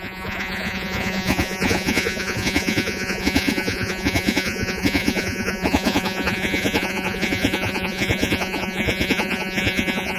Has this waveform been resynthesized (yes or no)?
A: yes